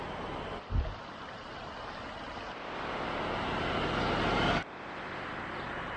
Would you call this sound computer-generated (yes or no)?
no